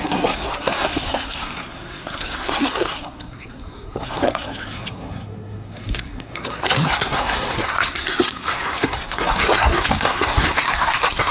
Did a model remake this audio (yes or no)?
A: yes